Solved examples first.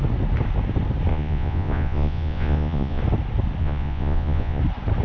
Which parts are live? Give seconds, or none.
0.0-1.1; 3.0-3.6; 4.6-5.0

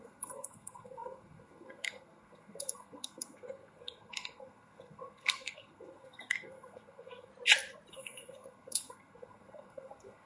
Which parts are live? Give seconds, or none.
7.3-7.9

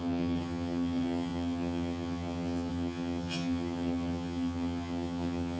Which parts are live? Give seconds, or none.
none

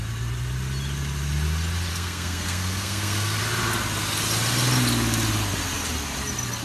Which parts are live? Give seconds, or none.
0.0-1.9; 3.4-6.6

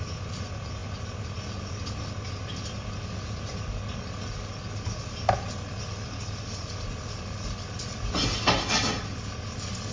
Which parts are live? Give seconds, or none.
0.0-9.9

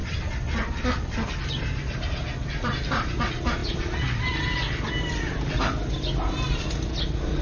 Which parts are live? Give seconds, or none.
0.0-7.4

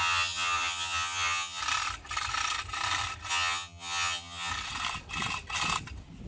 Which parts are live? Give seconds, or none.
1.6-3.3; 4.5-6.3